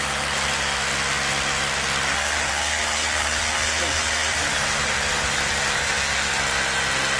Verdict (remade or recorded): recorded